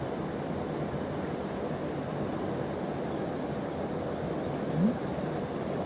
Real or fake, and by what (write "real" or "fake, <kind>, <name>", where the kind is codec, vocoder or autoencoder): real